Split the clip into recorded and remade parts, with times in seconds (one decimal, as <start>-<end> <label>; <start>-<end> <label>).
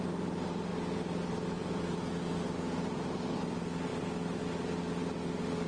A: 0.0-5.7 recorded